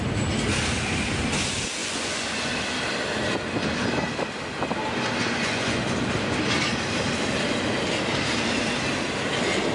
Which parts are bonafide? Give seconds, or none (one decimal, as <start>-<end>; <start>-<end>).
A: 0.0-1.8; 2.5-5.2; 5.8-9.7